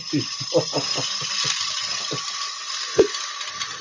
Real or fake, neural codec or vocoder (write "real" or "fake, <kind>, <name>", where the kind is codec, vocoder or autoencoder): real